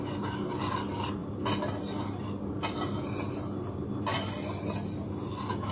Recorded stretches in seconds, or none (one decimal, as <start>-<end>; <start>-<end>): 0.0-5.7